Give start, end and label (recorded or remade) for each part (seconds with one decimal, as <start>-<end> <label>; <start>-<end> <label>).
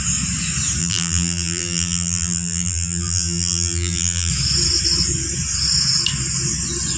0.0-0.8 recorded; 0.8-4.3 remade; 4.3-7.0 recorded